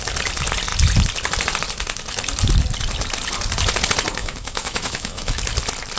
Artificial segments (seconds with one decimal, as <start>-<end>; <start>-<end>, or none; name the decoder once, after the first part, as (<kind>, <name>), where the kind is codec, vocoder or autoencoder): 4.2-5.4 (autoencoder, DAC-VAE)